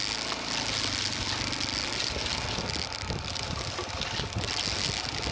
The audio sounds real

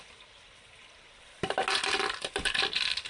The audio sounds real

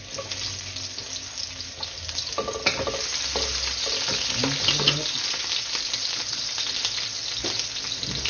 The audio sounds real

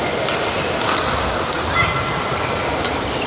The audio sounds real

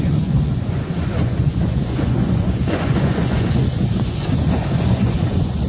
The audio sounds fake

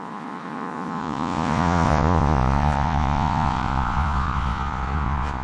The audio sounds fake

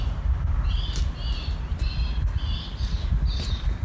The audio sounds real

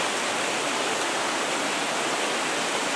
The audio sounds real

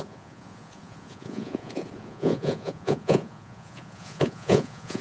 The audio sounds fake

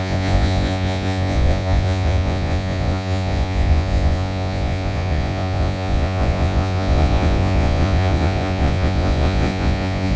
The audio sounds fake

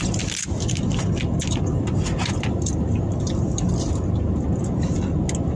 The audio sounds real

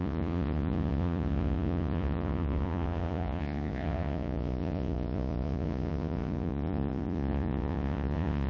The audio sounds fake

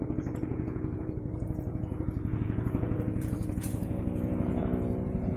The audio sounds fake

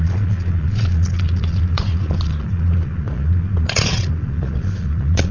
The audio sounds fake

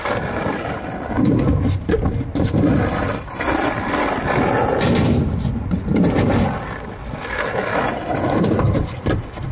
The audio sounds real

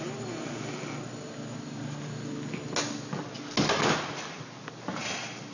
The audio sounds real